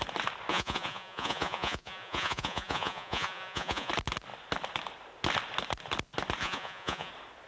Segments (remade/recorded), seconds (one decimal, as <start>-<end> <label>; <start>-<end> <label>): 0.0-0.5 recorded; 0.5-3.9 remade; 3.9-6.4 recorded; 6.4-7.1 remade; 7.1-7.5 recorded